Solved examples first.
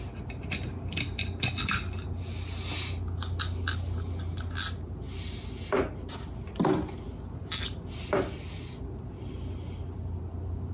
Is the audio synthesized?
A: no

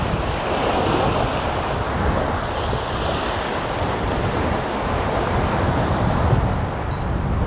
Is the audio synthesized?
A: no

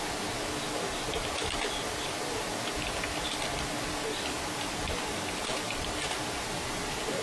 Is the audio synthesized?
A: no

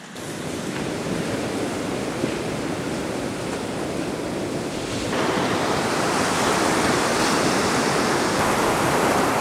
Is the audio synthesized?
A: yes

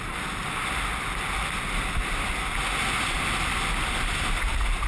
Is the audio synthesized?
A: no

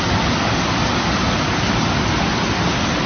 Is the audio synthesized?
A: no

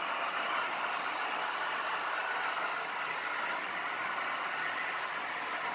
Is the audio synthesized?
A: yes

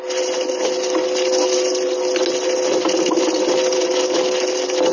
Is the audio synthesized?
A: no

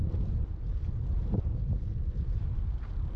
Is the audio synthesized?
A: yes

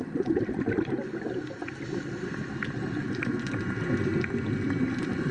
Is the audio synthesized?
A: no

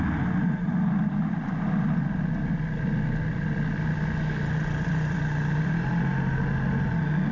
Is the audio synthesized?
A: no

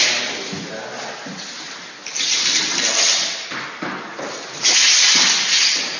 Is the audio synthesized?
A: no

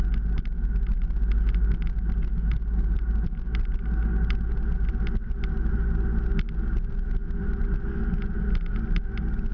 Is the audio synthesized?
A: no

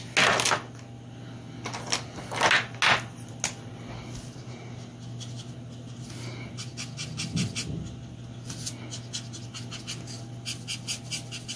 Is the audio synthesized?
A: no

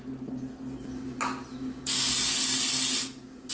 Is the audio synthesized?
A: no